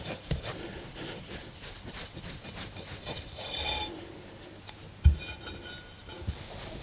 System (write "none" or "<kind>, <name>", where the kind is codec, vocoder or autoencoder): none